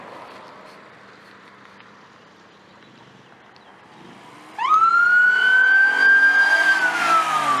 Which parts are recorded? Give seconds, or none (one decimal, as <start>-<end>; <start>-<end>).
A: 0.0-7.6